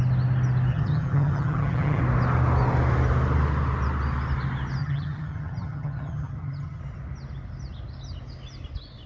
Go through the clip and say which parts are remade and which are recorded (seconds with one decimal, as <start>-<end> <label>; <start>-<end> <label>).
0.0-0.7 recorded; 0.7-2.0 remade; 2.0-4.8 recorded; 4.8-6.8 remade; 6.8-9.1 recorded